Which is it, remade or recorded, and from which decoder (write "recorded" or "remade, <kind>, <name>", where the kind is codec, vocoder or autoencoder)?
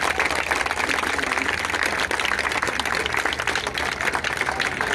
recorded